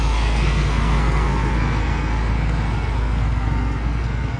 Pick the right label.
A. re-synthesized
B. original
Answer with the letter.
A